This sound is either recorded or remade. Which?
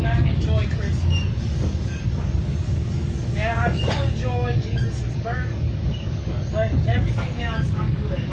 remade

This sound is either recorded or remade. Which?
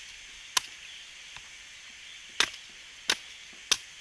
recorded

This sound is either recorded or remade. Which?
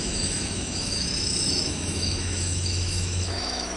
remade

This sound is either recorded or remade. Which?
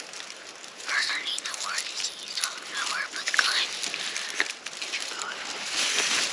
recorded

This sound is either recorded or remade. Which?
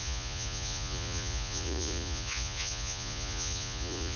remade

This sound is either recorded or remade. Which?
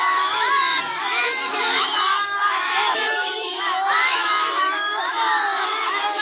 remade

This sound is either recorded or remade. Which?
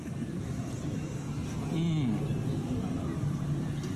recorded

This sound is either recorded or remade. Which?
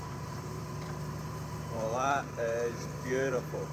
remade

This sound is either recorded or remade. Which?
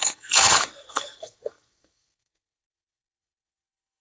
remade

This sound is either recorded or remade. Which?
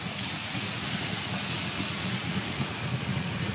remade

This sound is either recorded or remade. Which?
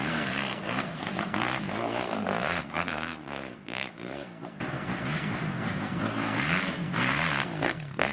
remade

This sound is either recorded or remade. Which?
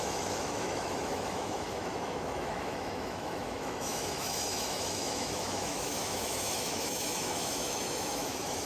remade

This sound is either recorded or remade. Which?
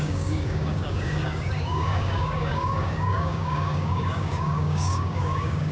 remade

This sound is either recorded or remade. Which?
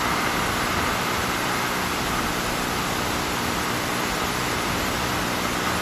recorded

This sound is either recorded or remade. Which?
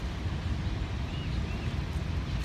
recorded